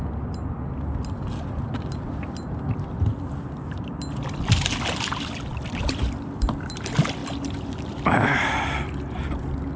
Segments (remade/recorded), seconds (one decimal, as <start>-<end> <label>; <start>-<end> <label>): 0.0-7.2 recorded; 7.2-9.0 remade; 9.0-9.8 recorded